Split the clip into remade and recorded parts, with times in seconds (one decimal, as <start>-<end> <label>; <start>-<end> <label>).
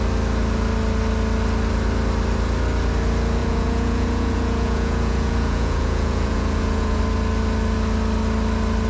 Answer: 0.0-3.4 recorded; 3.4-7.0 remade; 7.0-8.9 recorded